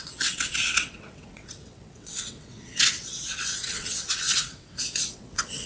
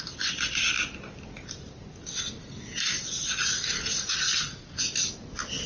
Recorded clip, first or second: second